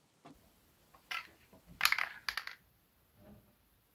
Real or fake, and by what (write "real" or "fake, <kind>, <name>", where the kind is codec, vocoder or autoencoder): real